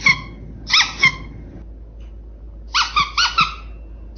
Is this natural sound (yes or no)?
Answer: yes